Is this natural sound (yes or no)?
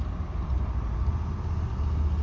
yes